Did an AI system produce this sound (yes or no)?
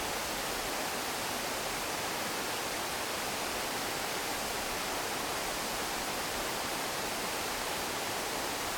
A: yes